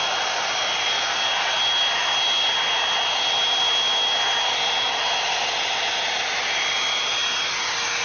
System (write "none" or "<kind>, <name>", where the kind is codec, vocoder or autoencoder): none